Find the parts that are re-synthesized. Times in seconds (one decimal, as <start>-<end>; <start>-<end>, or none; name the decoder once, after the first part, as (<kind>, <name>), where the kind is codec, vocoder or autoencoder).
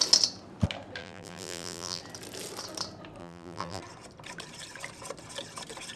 1.0-2.0 (vocoder, BigVGAN v2); 3.2-3.8